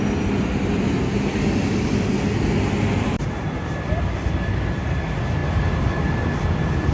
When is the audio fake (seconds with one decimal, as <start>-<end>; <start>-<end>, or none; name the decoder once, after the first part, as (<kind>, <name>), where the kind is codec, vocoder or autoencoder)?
none